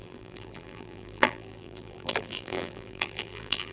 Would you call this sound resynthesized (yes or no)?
yes